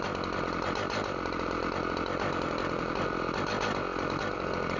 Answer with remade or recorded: recorded